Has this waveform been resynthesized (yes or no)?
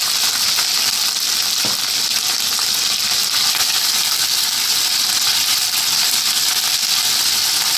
no